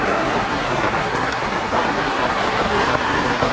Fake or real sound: fake